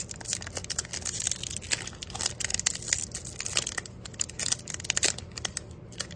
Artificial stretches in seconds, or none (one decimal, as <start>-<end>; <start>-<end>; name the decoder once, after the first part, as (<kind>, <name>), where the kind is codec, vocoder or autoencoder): none